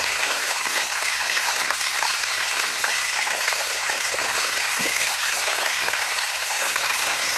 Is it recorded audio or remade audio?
remade